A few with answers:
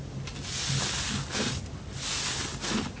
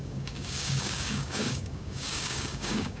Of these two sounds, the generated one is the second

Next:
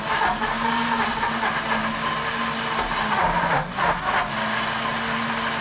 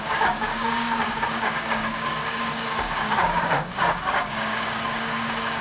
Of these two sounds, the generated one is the second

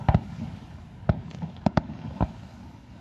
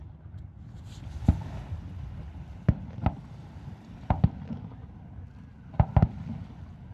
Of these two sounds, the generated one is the first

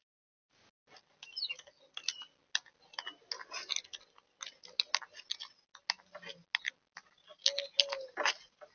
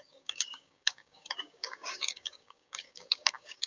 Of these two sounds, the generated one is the second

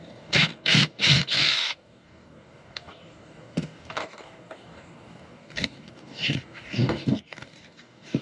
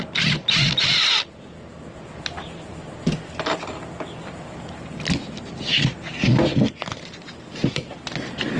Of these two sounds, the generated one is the first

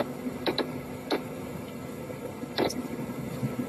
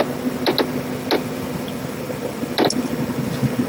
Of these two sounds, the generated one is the first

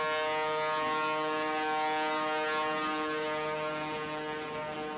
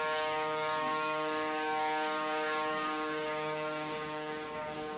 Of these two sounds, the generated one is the second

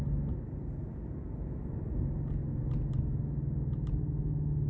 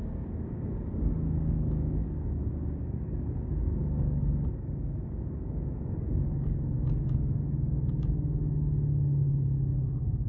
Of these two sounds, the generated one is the second